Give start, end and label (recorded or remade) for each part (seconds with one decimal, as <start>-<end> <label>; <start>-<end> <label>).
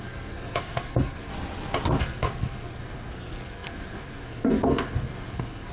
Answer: 0.0-1.3 remade; 1.3-2.0 recorded; 2.0-5.7 remade